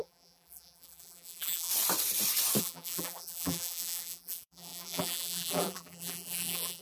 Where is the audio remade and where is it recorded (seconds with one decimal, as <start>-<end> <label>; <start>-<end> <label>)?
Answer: 0.0-1.7 remade; 1.7-2.6 recorded; 2.6-6.8 remade